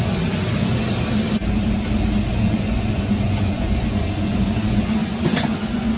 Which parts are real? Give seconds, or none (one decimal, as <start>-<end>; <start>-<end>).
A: 0.0-2.3